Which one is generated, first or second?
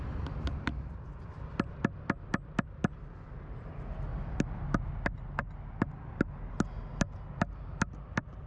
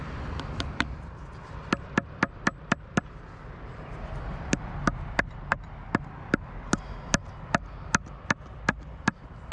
second